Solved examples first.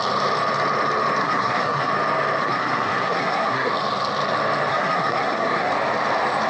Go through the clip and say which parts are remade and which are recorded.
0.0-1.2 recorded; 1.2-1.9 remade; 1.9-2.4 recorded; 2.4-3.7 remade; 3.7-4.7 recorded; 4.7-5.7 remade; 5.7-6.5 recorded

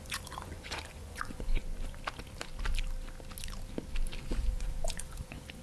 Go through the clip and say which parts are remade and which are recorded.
0.0-1.6 remade; 1.6-4.2 recorded; 4.2-5.6 remade

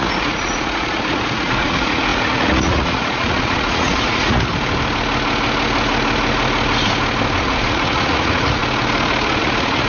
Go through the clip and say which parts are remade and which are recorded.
0.0-4.5 remade; 4.5-7.4 recorded; 7.4-8.6 remade; 8.6-9.4 recorded; 9.4-9.9 remade

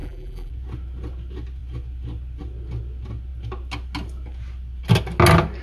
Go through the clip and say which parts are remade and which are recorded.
0.0-0.5 remade; 0.5-5.6 recorded

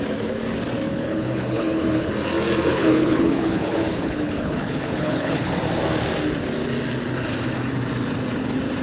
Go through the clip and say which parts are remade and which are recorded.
0.0-0.9 recorded; 0.9-2.1 remade; 2.1-2.7 recorded; 2.7-5.5 remade; 5.5-8.8 recorded

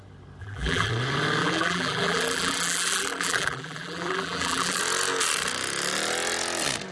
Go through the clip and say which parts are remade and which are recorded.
0.0-0.4 recorded; 0.4-0.9 remade; 0.9-1.4 recorded; 1.4-4.8 remade; 4.8-6.9 recorded

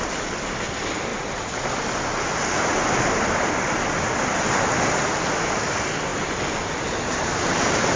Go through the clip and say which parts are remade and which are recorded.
0.0-8.0 recorded